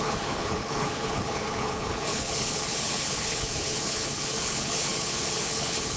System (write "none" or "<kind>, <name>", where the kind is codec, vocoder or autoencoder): codec, HILCodec